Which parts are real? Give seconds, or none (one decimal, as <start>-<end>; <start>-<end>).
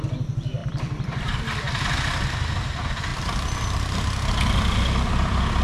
0.0-0.6; 1.4-3.1; 4.0-5.6